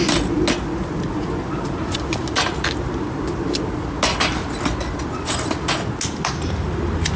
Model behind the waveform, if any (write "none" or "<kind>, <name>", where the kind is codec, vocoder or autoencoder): none